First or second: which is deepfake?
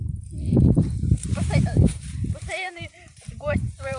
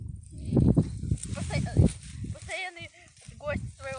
first